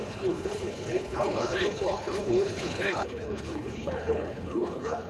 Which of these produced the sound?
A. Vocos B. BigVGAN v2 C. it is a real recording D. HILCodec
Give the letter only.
D